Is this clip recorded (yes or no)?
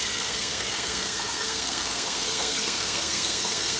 no